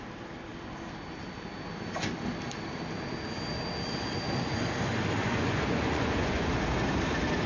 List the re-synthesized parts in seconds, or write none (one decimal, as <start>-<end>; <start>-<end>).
5.2-6.5